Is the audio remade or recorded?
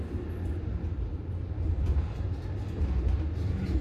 recorded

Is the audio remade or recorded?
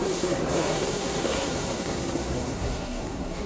remade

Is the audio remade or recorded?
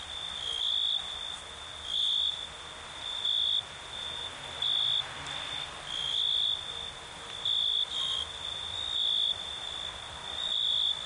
recorded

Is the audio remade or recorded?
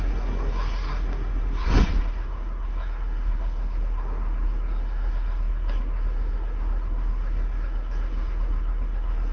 remade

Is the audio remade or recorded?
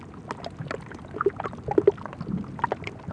recorded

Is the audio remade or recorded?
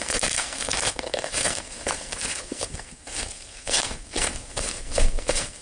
remade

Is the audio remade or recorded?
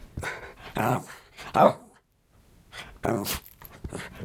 recorded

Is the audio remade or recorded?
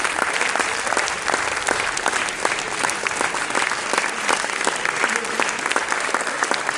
recorded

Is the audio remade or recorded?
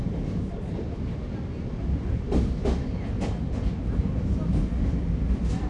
recorded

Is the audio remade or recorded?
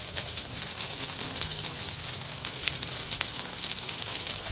remade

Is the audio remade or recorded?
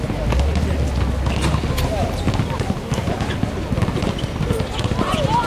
recorded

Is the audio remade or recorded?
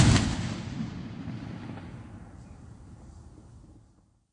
recorded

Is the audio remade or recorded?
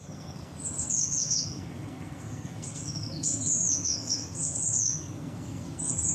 remade